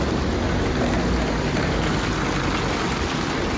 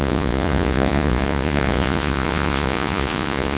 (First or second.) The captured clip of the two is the first